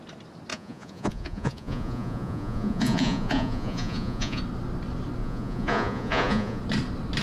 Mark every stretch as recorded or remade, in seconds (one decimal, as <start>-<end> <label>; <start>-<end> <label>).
0.0-0.5 recorded; 0.5-4.4 remade; 4.4-5.2 recorded; 5.2-6.6 remade; 6.6-7.2 recorded